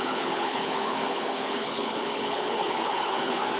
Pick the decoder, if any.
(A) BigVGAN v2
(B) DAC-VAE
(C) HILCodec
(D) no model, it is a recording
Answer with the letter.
C